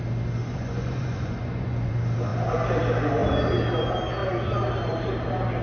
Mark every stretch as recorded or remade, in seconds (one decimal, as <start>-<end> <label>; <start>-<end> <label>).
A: 0.0-0.4 recorded; 0.4-1.9 remade; 1.9-5.6 recorded